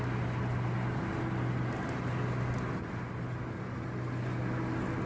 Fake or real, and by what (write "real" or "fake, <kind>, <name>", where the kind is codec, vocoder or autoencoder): real